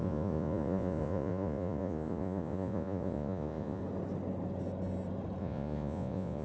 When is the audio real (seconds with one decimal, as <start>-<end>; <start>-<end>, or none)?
3.8-5.4